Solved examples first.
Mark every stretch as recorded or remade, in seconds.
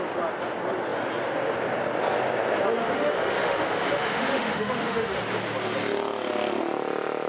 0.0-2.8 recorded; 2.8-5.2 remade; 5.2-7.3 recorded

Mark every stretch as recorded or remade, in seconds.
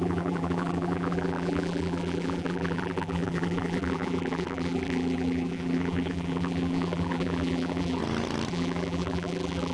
0.0-8.0 remade; 8.0-8.5 recorded; 8.5-9.7 remade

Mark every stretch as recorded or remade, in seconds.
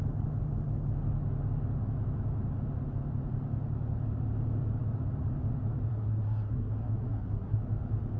0.0-5.9 recorded; 5.9-7.6 remade; 7.6-8.2 recorded